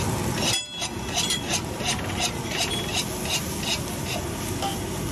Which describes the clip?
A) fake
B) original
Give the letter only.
B